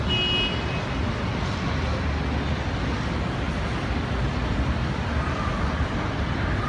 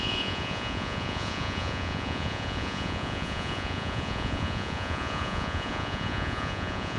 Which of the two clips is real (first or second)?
first